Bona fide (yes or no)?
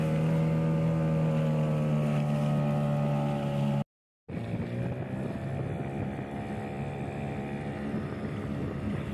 yes